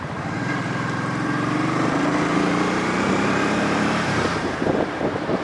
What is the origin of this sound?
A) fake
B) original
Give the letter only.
A